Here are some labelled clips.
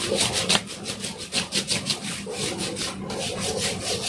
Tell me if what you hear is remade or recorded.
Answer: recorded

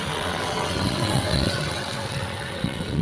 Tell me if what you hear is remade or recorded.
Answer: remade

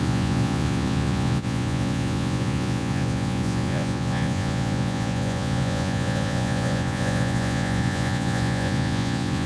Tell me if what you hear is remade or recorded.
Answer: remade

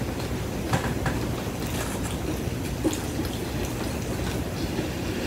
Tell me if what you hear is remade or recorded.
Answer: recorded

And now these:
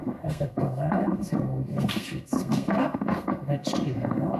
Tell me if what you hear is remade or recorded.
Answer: remade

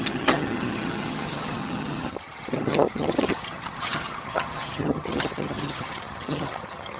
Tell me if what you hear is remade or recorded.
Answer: remade